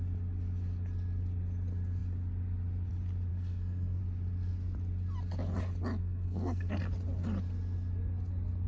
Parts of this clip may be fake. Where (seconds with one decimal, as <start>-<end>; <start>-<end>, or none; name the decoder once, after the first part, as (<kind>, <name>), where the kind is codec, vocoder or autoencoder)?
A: 3.3-4.0 (codec, SNAC); 6.0-6.8